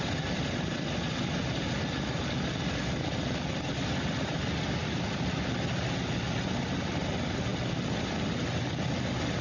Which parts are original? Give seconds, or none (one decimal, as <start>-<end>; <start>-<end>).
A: 0.0-4.8; 5.5-9.4